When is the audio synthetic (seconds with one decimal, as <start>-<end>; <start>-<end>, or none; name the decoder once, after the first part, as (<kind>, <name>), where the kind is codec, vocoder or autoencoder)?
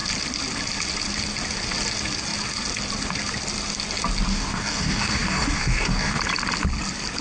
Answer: 4.3-6.2 (codec, DAC)